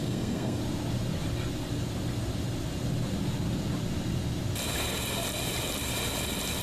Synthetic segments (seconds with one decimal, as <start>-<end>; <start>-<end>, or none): 0.0-0.6